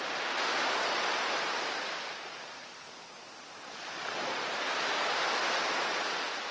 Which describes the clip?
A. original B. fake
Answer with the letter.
A